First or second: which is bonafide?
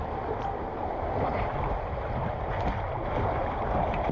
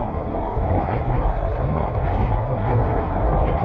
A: first